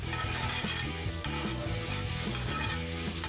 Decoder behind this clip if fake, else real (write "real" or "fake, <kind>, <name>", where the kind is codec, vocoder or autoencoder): real